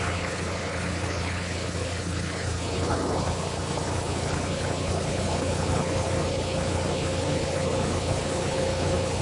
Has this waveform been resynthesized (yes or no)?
yes